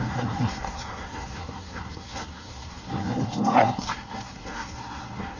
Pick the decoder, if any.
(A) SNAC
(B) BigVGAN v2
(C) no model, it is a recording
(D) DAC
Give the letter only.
A